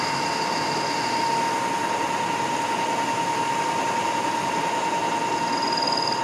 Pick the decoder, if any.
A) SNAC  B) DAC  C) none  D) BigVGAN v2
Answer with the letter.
C